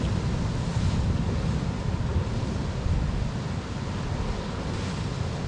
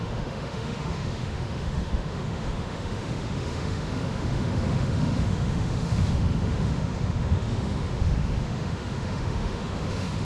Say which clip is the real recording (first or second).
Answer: first